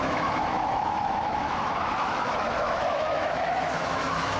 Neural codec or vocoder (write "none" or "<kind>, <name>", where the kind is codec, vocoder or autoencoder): autoencoder, DAC-VAE